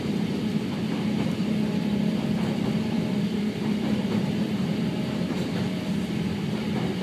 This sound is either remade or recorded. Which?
remade